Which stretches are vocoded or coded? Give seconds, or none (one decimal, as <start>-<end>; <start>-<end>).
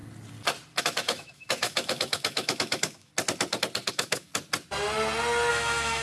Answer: 0.8-3.1; 3.9-4.3; 5.5-6.0